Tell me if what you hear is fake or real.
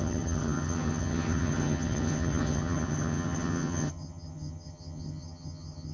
fake